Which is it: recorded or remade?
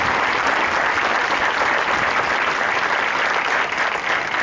recorded